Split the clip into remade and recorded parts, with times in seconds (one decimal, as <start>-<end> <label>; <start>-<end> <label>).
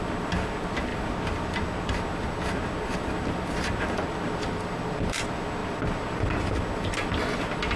0.0-7.8 recorded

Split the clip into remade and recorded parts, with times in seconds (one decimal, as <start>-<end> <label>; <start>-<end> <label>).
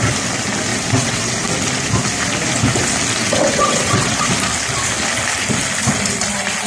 0.0-0.7 recorded; 0.7-1.3 remade; 1.3-3.2 recorded; 3.2-4.3 remade; 4.3-6.7 recorded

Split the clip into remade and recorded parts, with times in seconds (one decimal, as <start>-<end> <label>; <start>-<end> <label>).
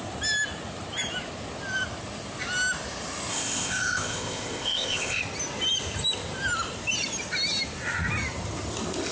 0.0-3.3 recorded; 3.3-5.2 remade; 5.2-9.1 recorded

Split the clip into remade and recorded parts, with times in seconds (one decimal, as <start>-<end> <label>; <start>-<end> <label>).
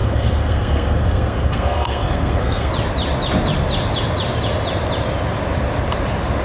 0.0-2.7 remade; 2.7-6.4 recorded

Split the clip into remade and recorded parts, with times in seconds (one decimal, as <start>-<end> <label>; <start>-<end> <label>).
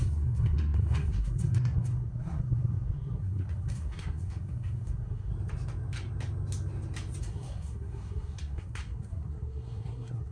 0.0-5.3 remade; 5.3-7.2 recorded; 7.2-10.3 remade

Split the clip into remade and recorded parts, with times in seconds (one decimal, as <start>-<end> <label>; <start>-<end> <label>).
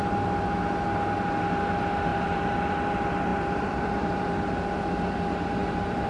0.0-2.1 recorded; 2.1-2.9 remade; 2.9-3.3 recorded; 3.3-4.4 remade; 4.4-5.6 recorded; 5.6-6.1 remade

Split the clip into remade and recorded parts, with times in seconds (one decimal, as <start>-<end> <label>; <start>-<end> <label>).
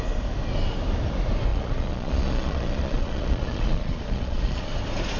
0.0-1.5 recorded; 1.5-4.6 remade; 4.6-5.2 recorded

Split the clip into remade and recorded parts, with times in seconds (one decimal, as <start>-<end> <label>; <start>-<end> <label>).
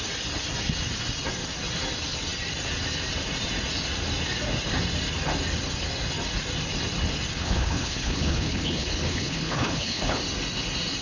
0.0-7.4 recorded; 7.4-10.2 remade; 10.2-11.0 recorded